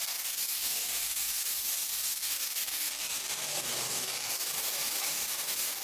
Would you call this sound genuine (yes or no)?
no